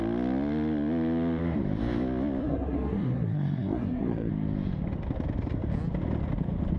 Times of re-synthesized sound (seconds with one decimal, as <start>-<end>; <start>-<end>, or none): 2.4-4.3